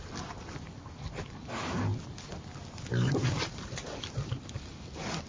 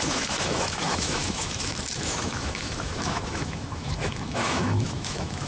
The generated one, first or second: second